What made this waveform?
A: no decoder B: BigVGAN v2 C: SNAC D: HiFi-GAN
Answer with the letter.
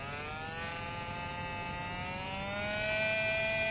A